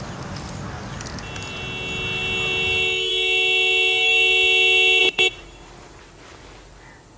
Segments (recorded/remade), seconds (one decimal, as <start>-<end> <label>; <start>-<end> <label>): 0.0-5.0 recorded; 5.0-6.0 remade; 6.0-7.2 recorded